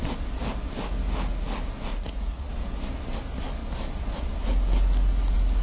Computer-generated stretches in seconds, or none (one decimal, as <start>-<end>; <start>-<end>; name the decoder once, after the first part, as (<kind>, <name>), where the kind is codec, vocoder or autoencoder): 1.9-2.5 (vocoder, Vocos)